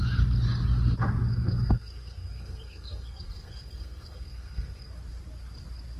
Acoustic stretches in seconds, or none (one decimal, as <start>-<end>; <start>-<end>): 0.0-1.3; 4.9-6.0